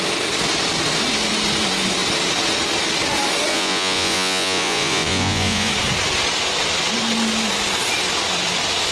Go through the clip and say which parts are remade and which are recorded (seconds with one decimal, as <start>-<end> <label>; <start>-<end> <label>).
0.0-3.5 recorded; 3.5-5.7 remade; 5.7-8.9 recorded